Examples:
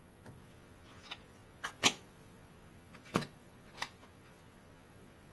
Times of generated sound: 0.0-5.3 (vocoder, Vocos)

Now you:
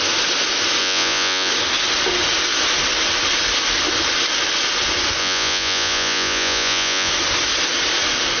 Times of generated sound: 0.8-1.5 (vocoder, Vocos); 5.2-7.1

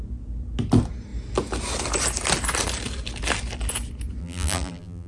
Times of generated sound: 4.2-5.1 (vocoder, BigVGAN v2)

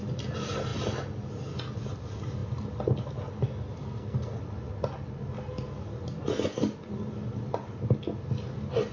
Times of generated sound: 3.8-4.4 (codec, SNAC)

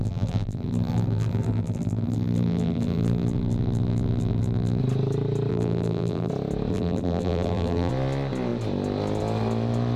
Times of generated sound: 0.0-4.8 (vocoder, BigVGAN v2); 5.5-6.3; 6.7-7.9